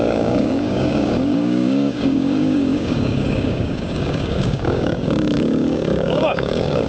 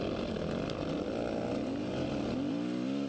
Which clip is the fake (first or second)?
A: first